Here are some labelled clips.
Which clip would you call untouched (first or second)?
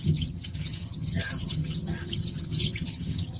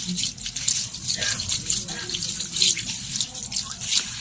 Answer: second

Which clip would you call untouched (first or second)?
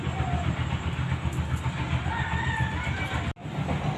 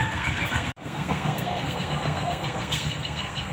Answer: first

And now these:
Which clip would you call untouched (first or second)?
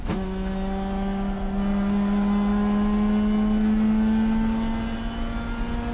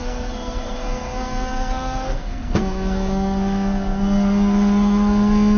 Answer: first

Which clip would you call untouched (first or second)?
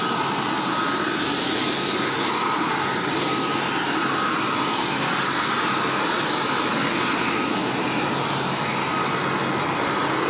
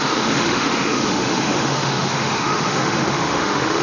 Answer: first